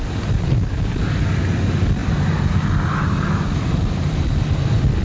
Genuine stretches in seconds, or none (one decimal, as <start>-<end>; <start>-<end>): 0.0-5.0